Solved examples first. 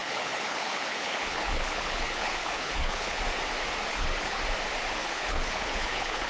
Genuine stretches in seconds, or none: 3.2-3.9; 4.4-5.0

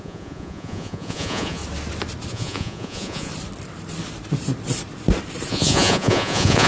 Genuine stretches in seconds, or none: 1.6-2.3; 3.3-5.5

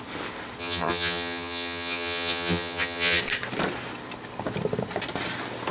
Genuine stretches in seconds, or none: 0.0-0.6; 3.2-5.7

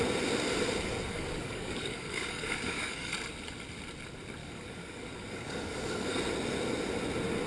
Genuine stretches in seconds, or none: 0.0-1.1; 3.1-4.4; 6.2-7.5

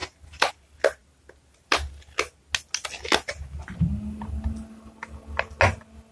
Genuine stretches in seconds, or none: 0.0-6.1

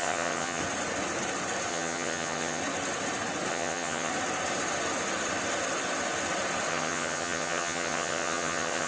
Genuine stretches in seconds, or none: 0.6-1.7; 2.6-3.5; 4.1-6.7